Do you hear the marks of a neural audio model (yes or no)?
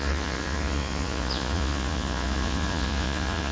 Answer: yes